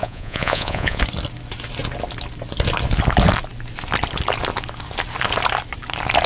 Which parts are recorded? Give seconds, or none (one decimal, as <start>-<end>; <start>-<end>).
1.0-6.3